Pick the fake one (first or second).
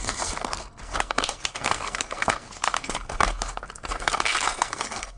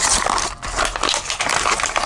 first